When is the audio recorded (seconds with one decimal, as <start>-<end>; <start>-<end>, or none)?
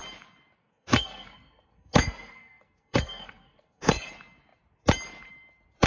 0.0-0.6; 4.1-5.9